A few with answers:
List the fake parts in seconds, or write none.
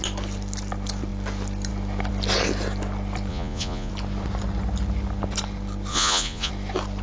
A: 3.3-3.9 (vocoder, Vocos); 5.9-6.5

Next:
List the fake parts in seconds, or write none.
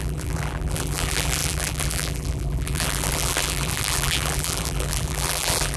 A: 0.0-5.8 (vocoder, BigVGAN v2)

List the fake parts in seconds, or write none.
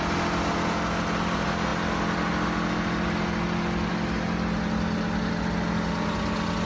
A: none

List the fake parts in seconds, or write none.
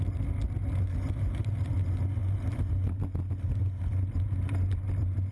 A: none